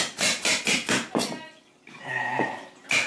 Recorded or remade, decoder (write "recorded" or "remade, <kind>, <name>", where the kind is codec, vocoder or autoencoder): recorded